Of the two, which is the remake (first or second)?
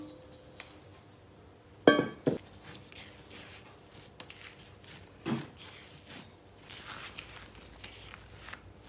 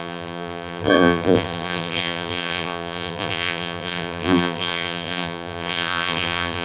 second